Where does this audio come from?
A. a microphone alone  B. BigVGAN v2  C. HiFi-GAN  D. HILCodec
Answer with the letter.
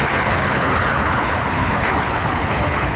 D